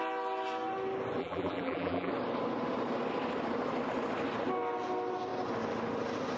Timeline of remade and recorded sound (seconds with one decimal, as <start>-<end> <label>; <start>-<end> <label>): 0.0-1.2 recorded; 1.2-2.1 remade; 2.1-6.4 recorded